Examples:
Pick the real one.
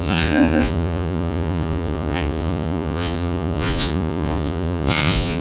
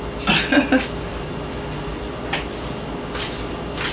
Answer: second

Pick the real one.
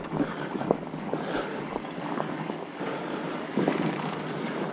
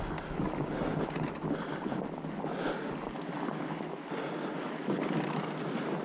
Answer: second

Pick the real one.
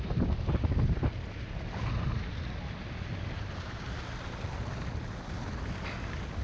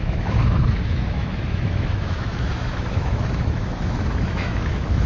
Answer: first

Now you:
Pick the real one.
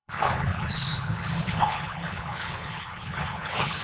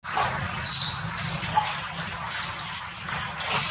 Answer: second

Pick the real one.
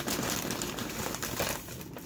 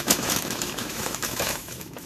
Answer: first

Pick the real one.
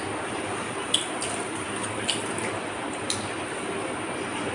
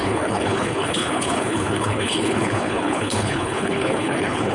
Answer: first